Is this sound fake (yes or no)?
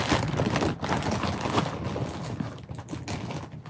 no